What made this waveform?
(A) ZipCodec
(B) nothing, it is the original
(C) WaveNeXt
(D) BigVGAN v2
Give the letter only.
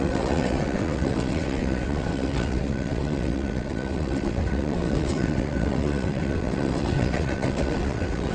C